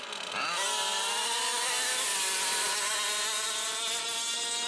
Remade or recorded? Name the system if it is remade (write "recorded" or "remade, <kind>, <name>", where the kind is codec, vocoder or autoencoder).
recorded